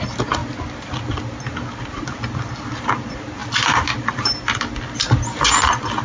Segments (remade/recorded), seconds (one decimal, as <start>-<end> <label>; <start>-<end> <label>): 0.0-6.0 recorded